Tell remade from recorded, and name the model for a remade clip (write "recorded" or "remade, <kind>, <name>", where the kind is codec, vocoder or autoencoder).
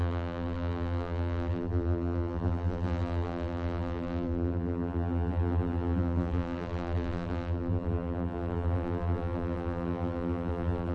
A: remade, vocoder, BigVGAN v2